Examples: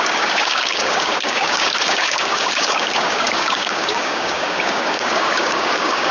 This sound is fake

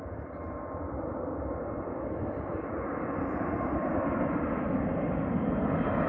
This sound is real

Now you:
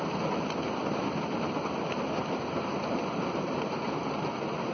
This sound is real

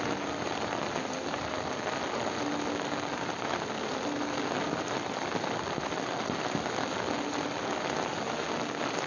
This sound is real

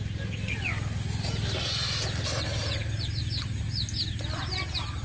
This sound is real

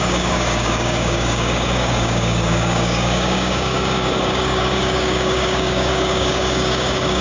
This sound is fake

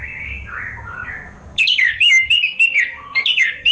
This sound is fake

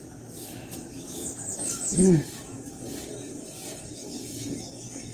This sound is fake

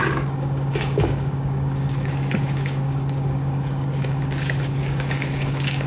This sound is fake